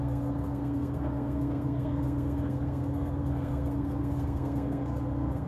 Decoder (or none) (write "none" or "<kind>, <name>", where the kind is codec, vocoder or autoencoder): codec, SNAC